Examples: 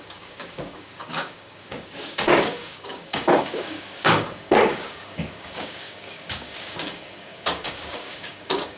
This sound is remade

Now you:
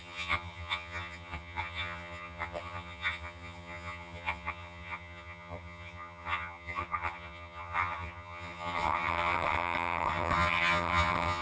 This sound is remade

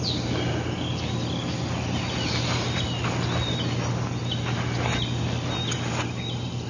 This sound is recorded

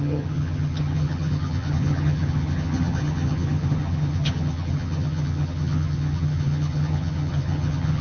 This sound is remade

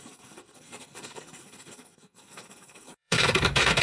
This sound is remade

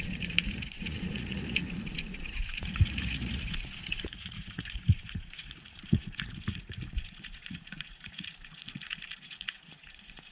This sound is remade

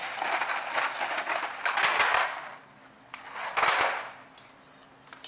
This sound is recorded